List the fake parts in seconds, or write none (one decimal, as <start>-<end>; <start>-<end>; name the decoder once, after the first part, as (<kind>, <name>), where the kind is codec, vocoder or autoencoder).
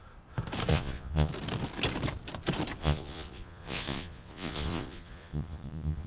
0.7-1.3 (vocoder, Vocos); 2.8-6.1